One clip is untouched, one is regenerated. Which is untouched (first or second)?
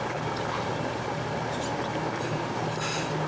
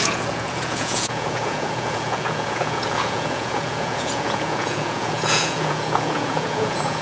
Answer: first